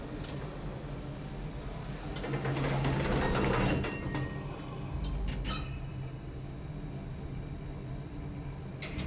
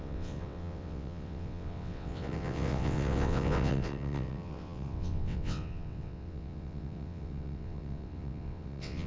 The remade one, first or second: second